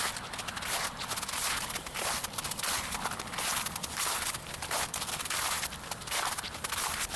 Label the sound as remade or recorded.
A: recorded